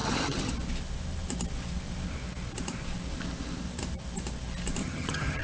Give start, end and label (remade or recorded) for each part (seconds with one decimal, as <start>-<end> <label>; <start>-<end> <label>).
0.0-0.5 remade; 0.5-4.8 recorded; 4.8-5.4 remade